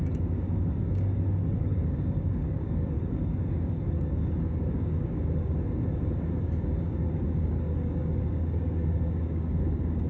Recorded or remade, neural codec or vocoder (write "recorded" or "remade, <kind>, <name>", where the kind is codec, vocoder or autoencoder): remade, codec, DAC